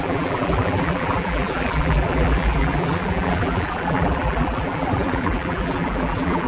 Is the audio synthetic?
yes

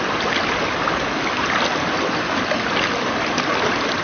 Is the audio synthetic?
no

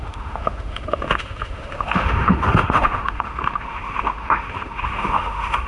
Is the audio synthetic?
yes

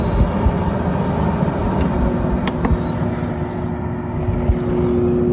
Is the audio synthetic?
no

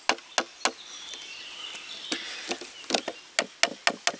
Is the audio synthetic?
no